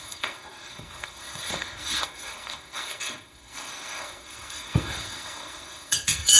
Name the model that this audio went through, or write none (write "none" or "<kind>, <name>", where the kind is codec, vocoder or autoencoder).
codec, SNAC